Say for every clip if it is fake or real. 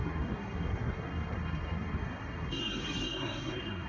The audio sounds fake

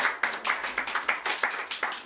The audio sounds real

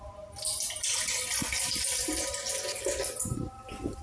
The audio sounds real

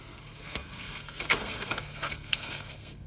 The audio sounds fake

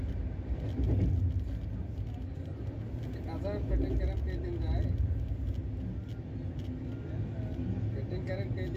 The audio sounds real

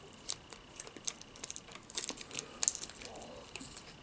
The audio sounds real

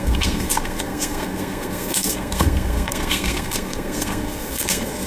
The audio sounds fake